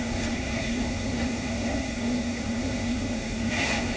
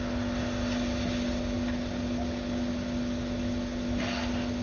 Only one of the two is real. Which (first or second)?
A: second